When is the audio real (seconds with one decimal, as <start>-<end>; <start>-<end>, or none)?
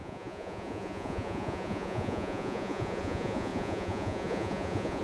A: none